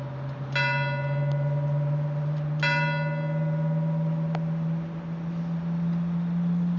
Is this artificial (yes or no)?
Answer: no